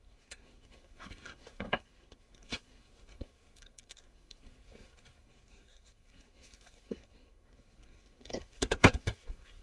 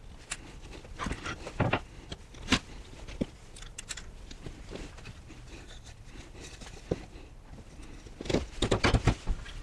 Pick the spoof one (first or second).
first